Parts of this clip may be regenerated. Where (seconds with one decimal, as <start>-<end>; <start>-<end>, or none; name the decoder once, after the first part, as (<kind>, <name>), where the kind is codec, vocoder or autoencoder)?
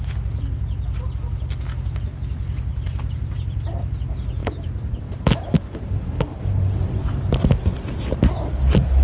2.7-3.3 (vocoder, BigVGAN v2); 4.4-6.9